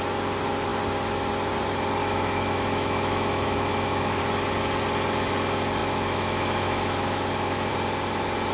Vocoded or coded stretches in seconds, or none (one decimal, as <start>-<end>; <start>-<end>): 2.0-4.2; 5.8-7.7